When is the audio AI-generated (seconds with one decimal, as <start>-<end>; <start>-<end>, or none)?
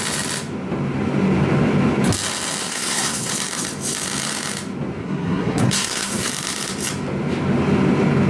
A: 2.6-3.3; 5.0-6.3